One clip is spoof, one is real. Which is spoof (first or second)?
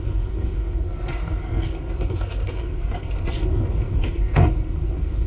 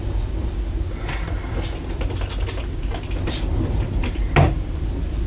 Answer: first